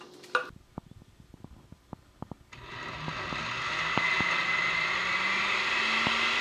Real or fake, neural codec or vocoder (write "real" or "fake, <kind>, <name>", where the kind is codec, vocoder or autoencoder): real